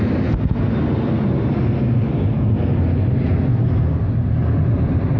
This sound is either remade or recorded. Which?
recorded